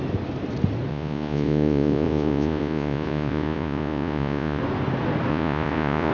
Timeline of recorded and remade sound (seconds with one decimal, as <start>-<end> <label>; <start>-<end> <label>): 0.0-0.9 recorded; 0.9-4.6 remade; 4.6-5.3 recorded; 5.3-6.1 remade